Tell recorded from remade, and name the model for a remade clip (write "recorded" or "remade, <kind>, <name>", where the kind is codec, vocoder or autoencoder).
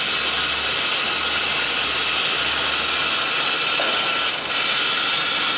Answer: recorded